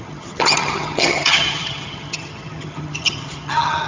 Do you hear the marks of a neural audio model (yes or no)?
yes